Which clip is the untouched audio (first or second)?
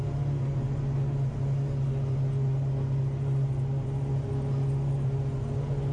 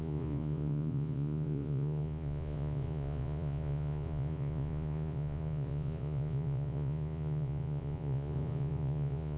first